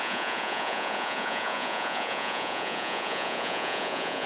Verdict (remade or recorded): remade